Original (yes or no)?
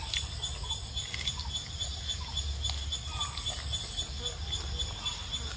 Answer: yes